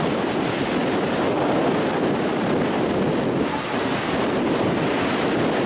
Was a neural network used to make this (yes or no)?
no